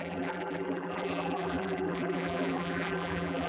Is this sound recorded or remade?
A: remade